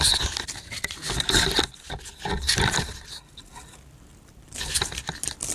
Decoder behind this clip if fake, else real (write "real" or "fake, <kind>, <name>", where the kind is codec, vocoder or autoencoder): real